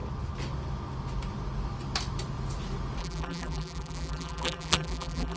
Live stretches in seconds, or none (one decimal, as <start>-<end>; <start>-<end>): 0.0-3.0